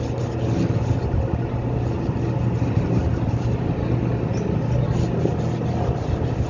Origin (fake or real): real